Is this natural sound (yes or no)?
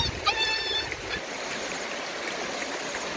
yes